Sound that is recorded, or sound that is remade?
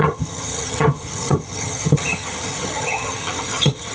remade